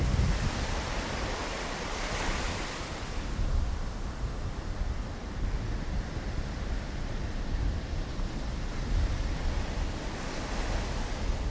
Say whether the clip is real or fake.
real